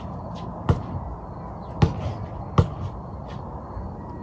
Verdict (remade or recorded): recorded